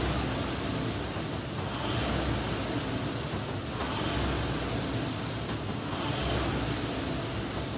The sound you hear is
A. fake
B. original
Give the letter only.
B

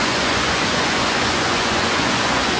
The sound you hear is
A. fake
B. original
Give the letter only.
A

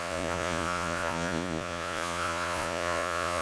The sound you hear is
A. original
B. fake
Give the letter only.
B